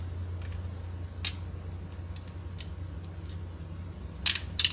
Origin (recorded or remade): recorded